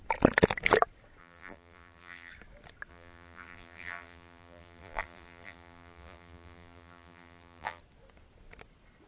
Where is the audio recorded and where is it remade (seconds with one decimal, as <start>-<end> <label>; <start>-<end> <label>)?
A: 0.0-1.2 recorded; 1.2-2.3 remade; 2.3-2.9 recorded; 2.9-7.8 remade; 7.8-9.1 recorded

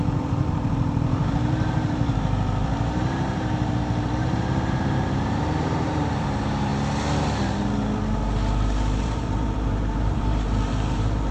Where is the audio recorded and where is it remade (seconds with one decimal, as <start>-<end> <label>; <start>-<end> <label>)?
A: 0.0-6.7 remade; 6.7-9.0 recorded; 9.0-11.3 remade

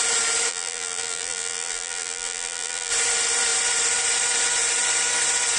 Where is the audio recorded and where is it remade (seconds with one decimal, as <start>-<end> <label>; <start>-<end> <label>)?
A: 0.0-0.5 recorded; 0.5-2.9 remade; 2.9-5.6 recorded

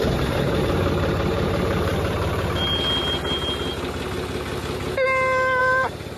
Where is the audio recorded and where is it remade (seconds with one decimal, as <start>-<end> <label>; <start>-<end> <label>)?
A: 0.0-1.9 remade; 1.9-5.6 recorded; 5.6-6.2 remade

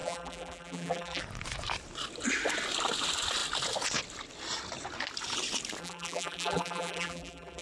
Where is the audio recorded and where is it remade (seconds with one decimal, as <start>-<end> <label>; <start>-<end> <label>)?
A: 0.0-1.2 remade; 1.2-5.8 recorded; 5.8-7.6 remade